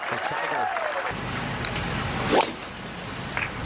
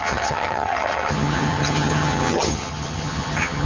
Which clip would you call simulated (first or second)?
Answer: second